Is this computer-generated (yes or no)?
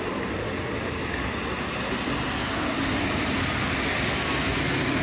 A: no